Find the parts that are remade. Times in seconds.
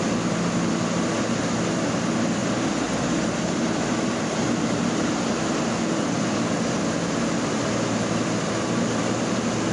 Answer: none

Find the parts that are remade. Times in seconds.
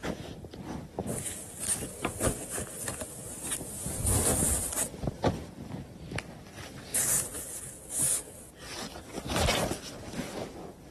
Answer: none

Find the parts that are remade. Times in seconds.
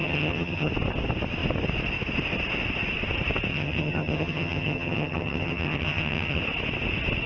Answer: 0.0-0.7 (vocoder, HiFi-GAN); 3.5-6.4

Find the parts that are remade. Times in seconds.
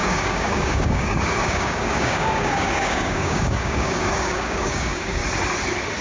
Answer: 0.0-5.2 (codec, DAC)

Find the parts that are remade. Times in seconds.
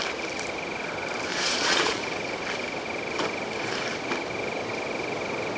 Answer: 1.3-2.0 (vocoder, Vocos)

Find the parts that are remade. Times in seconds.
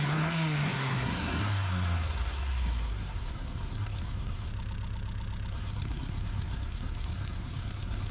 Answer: 0.0-4.5 (codec, SNAC); 5.5-8.1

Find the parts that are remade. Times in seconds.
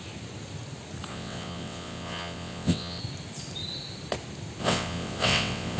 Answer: 1.1-3.0 (vocoder, WaveNeXt); 4.6-5.8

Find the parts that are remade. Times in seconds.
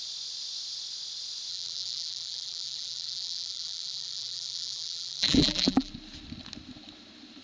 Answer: 1.5-5.9 (vocoder, BigVGAN v2)